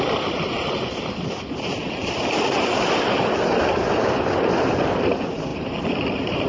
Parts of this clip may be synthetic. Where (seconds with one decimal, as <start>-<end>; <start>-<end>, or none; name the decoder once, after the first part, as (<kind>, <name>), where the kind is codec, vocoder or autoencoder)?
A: none